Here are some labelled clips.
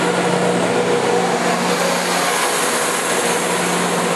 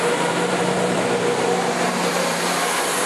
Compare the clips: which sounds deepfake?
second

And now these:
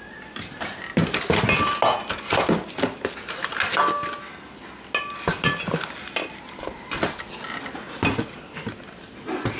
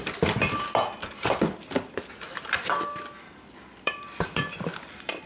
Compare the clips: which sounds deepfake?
second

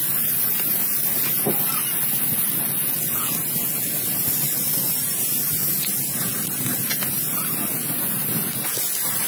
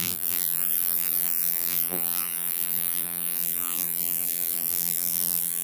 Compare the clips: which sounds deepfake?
second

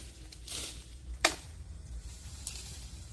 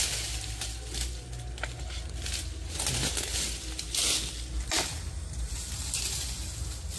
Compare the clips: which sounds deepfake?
first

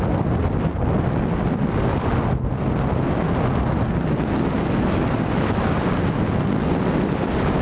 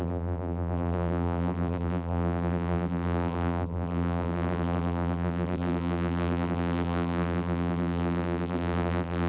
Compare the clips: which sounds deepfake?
second